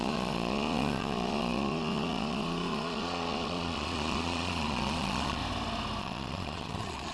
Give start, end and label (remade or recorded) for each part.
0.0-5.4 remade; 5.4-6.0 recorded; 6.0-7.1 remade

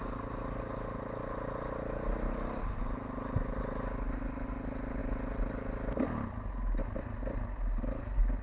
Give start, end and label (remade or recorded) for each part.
0.0-8.4 recorded

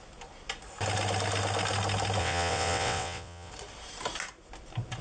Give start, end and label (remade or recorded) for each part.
0.0-2.2 recorded; 2.2-3.5 remade; 3.5-5.0 recorded

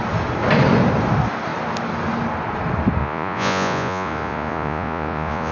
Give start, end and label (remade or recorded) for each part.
0.0-3.0 recorded; 3.0-5.5 remade

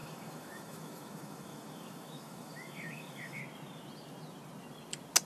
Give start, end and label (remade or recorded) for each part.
0.0-3.4 remade; 3.4-5.3 recorded

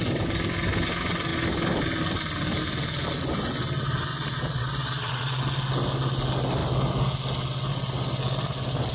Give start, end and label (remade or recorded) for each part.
0.0-4.1 recorded; 4.1-5.4 remade; 5.4-8.9 recorded

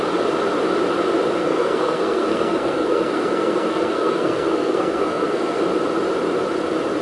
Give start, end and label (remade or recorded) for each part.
0.0-1.4 recorded; 1.4-5.6 remade; 5.6-7.0 recorded

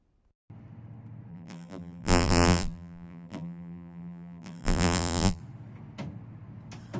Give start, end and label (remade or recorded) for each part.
0.0-1.3 recorded; 1.3-5.4 remade; 5.4-7.0 recorded